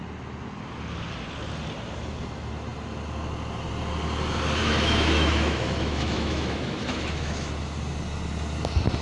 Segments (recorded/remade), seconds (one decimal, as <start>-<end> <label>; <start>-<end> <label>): 0.0-4.6 recorded; 4.6-7.5 remade; 7.5-9.0 recorded